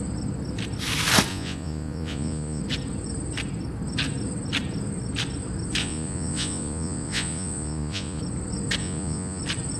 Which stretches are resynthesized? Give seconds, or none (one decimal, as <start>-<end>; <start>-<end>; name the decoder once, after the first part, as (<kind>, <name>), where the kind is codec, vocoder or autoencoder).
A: 1.3-2.6 (vocoder, Vocos); 5.8-8.2; 8.8-9.4